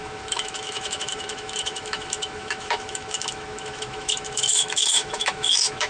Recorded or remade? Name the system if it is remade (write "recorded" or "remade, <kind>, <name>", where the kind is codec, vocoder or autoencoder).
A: remade, autoencoder, DAC-VAE